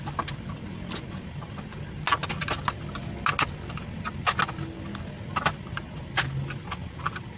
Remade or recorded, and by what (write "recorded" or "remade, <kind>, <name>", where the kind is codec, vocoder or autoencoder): recorded